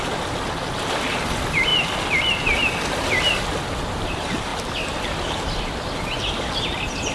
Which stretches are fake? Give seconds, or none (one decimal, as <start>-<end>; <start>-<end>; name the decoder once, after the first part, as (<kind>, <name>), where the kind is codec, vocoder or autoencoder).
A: none